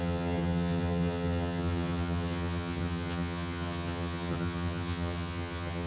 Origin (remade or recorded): remade